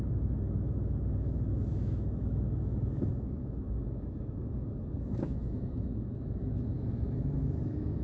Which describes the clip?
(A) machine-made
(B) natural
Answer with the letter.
A